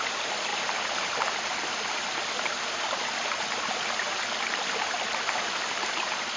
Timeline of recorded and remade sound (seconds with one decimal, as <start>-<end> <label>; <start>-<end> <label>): 0.0-6.4 recorded